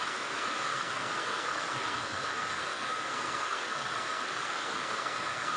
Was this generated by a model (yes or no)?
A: yes